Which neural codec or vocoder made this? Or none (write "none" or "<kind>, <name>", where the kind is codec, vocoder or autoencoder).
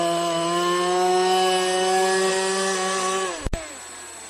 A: none